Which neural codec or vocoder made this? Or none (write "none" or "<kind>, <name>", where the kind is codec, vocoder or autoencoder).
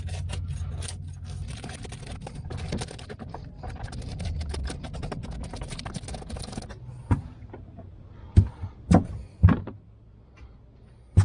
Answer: none